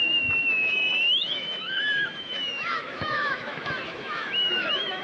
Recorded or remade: remade